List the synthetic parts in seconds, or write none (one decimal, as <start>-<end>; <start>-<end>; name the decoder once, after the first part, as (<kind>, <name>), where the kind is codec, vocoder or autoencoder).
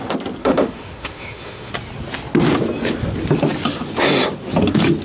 0.4-1.7 (autoencoder, DAC-VAE)